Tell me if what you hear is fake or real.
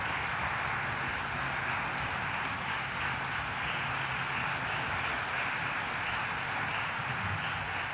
real